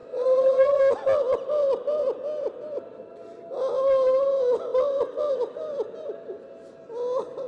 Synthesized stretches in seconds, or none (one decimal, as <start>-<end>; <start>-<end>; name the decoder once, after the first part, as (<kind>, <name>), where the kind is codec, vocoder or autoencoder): 0.0-0.8 (vocoder, Vocos)